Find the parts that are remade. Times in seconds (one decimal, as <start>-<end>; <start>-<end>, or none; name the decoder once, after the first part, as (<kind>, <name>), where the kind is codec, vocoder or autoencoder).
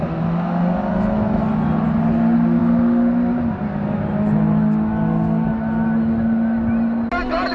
none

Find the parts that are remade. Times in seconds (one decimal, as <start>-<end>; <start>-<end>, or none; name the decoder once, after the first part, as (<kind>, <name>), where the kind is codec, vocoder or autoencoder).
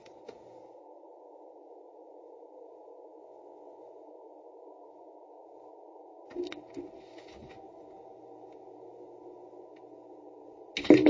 3.2-3.8 (vocoder, WaveNeXt)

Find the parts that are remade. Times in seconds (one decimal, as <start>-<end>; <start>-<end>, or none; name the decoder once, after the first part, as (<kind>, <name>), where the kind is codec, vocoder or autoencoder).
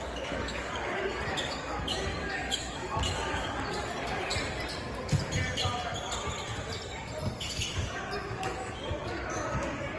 0.0-4.3 (codec, DAC); 7.3-10.0